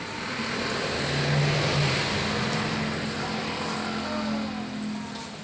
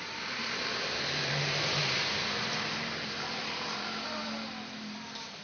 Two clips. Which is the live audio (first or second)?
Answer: first